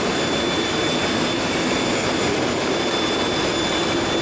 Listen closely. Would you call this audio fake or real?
real